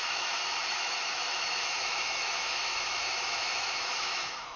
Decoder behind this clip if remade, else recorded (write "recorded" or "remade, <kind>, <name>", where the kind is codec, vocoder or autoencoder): remade, autoencoder, DAC-VAE